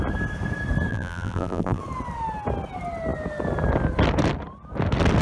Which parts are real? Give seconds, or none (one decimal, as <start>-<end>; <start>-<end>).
0.0-0.9; 1.8-5.2